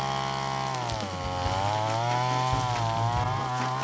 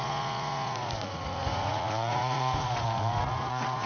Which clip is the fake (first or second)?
second